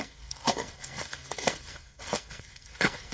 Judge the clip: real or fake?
fake